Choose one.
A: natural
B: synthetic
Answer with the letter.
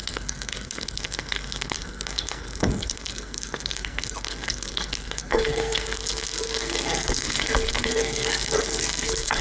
B